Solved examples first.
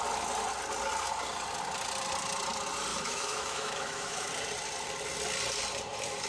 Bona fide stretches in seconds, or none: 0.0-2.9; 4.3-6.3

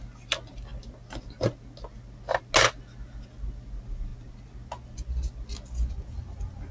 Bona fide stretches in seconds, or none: 0.0-6.7

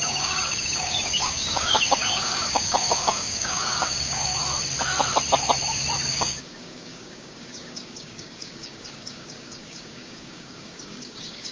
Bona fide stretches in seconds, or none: 4.4-6.1

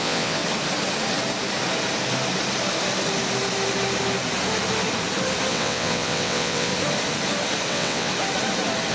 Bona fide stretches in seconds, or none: 0.4-5.5; 6.7-7.7; 8.1-8.9